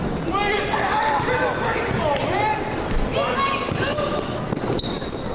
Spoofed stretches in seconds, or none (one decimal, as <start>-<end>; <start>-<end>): none